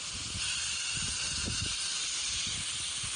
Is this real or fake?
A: real